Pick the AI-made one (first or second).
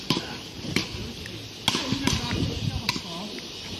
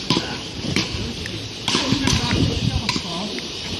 second